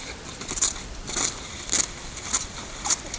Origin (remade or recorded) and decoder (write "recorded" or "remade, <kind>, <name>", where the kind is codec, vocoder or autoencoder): remade, vocoder, BigVGAN v2